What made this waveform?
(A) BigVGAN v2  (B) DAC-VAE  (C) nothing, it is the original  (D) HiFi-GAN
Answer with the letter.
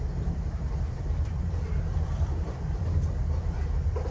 A